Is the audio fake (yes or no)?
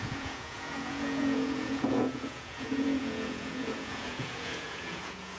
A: yes